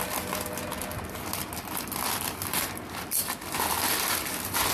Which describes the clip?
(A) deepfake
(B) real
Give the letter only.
B